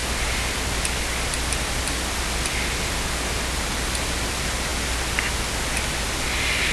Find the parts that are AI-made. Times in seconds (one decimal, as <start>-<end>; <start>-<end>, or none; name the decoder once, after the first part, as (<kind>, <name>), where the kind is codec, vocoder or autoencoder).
none